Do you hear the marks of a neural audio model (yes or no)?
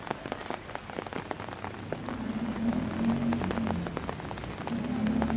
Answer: no